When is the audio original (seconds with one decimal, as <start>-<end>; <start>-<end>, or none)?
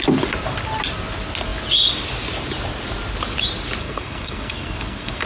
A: 0.0-3.8